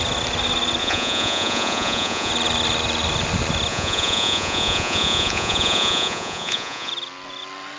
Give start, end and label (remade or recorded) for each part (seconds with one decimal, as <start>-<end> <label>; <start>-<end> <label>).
0.0-0.8 recorded; 0.8-2.3 remade; 2.3-3.7 recorded; 3.7-6.9 remade; 6.9-7.8 recorded